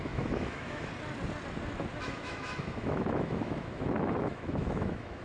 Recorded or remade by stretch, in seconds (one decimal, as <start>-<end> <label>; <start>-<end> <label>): 0.0-0.9 remade; 0.9-2.0 recorded; 2.0-5.2 remade